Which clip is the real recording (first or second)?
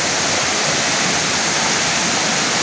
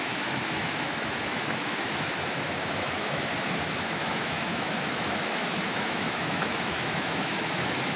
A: first